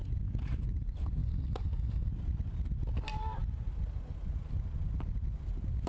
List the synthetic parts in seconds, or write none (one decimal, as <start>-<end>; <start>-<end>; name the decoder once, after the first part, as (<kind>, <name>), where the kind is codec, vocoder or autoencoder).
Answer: 1.2-2.1 (codec, DAC)